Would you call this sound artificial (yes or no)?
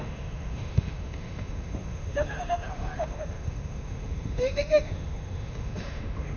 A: yes